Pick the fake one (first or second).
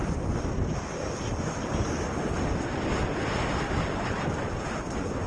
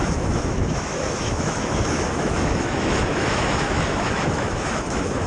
second